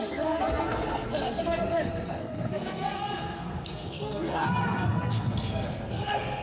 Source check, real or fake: fake